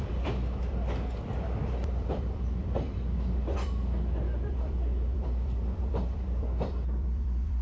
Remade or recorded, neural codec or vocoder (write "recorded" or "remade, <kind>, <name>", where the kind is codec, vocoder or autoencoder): remade, vocoder, BigVGAN v2